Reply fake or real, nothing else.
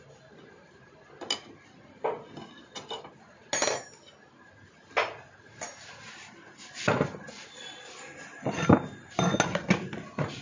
real